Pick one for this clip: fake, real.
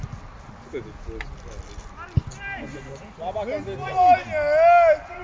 real